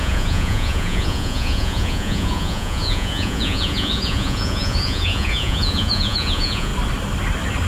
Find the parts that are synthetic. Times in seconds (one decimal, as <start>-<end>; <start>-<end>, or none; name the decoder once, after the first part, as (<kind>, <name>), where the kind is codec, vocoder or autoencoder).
0.0-6.7 (vocoder, Vocos)